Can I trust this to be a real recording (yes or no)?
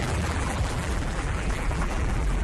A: no